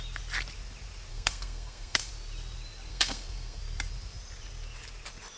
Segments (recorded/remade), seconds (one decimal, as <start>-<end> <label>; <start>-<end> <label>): 0.0-1.1 recorded; 1.1-2.1 remade; 2.1-2.9 recorded; 2.9-3.6 remade; 3.6-5.4 recorded